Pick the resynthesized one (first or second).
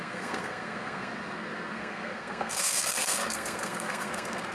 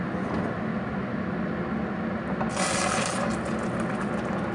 first